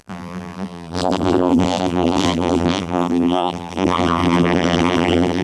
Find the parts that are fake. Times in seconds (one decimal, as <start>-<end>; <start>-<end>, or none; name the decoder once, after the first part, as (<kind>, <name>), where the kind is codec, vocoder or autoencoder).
0.0-5.4 (vocoder, BigVGAN v2)